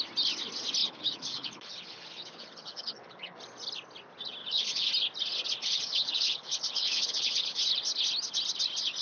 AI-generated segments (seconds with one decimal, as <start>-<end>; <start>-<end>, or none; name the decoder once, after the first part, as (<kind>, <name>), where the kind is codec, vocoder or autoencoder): 0.8-3.4 (codec, HILCodec); 4.4-4.9; 5.6-7.6